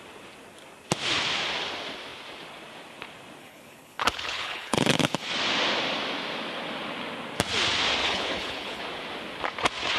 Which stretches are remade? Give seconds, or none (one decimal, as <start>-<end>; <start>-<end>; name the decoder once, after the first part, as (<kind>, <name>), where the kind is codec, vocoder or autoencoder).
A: 3.4-5.3 (codec, HILCodec); 8.0-8.8